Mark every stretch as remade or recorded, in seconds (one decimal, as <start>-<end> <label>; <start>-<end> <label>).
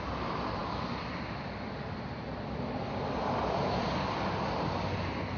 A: 0.0-5.4 recorded